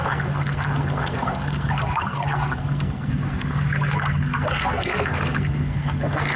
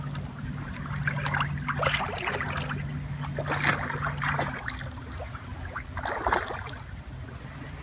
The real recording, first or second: second